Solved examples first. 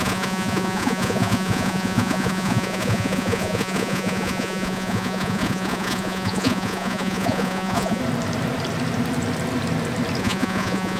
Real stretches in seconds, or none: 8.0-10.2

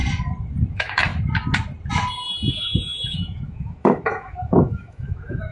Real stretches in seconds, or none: 0.0-0.7; 1.1-2.5

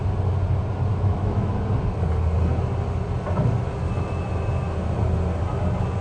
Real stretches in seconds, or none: 0.0-0.9; 1.5-6.0